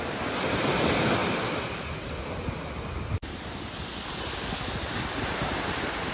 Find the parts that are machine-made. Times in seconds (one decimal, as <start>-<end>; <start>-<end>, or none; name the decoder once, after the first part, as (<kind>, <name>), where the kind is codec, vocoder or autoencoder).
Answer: none